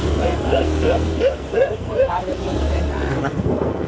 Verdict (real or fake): fake